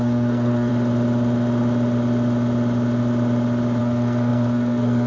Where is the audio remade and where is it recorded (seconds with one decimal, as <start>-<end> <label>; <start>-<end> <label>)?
0.0-0.7 remade; 0.7-3.8 recorded; 3.8-5.1 remade